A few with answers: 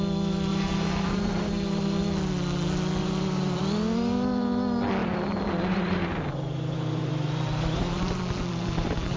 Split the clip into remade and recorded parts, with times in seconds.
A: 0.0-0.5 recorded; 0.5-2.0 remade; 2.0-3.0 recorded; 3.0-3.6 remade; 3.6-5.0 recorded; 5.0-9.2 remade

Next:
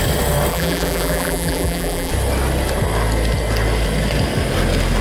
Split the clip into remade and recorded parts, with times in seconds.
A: 0.0-0.5 recorded; 0.5-2.1 remade; 2.1-5.0 recorded

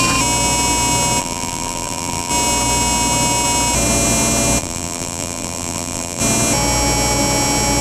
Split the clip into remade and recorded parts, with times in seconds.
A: 0.0-1.2 recorded; 1.2-2.3 remade; 2.3-4.6 recorded; 4.6-6.2 remade; 6.2-7.8 recorded

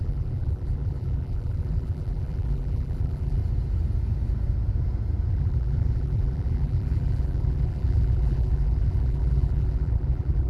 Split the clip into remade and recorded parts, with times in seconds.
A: 0.0-3.4 remade; 3.4-5.3 recorded; 5.3-10.5 remade